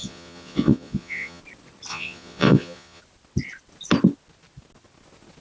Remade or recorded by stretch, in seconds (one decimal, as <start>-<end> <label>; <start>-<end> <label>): 0.0-1.4 remade; 1.4-1.9 recorded; 1.9-3.0 remade; 3.0-5.4 recorded

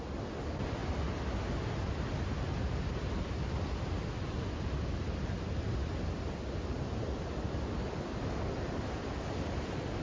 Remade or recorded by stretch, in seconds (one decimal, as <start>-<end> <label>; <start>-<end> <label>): 0.0-10.0 recorded

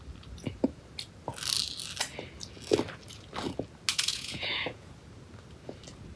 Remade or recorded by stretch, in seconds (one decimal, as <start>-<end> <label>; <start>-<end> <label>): 0.0-3.9 recorded; 3.9-4.9 remade; 4.9-6.2 recorded

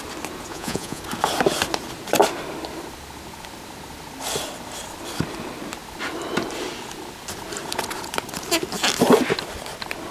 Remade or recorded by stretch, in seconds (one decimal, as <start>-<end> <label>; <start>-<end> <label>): 0.0-0.5 recorded; 0.5-1.0 remade; 1.0-10.1 recorded

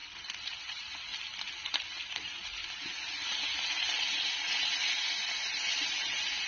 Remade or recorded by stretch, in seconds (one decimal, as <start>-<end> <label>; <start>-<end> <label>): 0.0-0.6 recorded; 0.6-1.1 remade; 1.1-2.1 recorded; 2.1-2.6 remade; 2.6-6.5 recorded

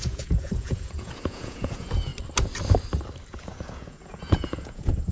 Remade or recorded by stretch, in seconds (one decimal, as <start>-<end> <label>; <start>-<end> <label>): 0.0-2.1 remade; 2.1-3.3 recorded; 3.3-5.1 remade

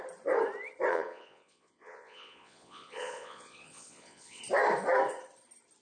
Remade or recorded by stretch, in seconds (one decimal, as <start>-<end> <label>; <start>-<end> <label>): 0.0-0.9 recorded; 0.9-4.4 remade; 4.4-5.8 recorded

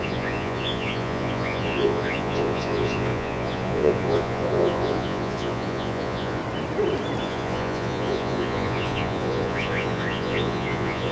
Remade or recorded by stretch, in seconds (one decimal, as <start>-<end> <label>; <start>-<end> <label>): 0.0-6.4 remade; 6.4-7.2 recorded; 7.2-11.1 remade